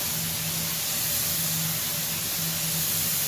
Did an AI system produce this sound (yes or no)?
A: no